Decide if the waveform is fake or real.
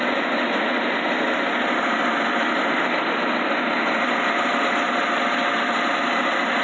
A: real